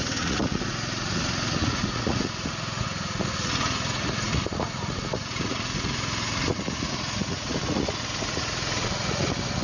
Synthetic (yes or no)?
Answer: yes